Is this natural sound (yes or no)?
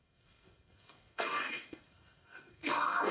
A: no